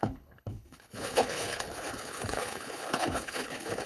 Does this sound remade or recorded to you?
remade